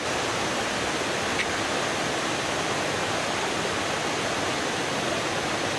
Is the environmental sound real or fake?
real